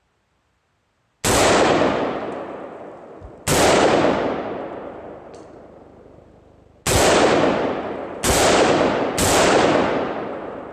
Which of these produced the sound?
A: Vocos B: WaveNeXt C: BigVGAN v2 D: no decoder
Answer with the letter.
D